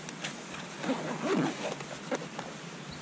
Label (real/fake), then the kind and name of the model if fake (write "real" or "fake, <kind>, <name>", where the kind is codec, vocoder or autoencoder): real